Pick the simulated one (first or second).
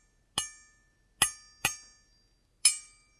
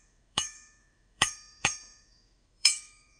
second